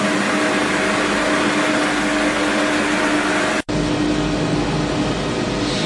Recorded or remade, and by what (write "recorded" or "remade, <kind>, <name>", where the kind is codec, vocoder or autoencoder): recorded